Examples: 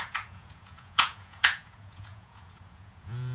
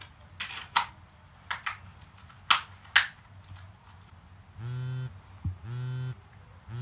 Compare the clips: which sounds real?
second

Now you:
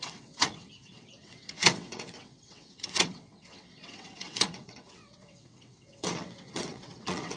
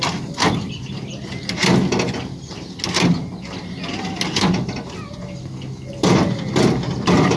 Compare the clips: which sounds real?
second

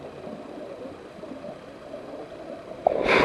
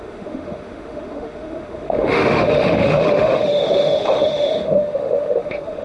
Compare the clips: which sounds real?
first